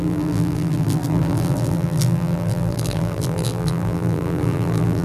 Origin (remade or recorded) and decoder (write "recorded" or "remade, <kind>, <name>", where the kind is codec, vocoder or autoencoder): remade, vocoder, BigVGAN v2